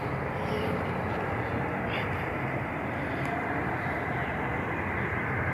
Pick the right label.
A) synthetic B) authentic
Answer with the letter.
A